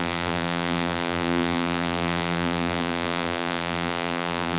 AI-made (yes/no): yes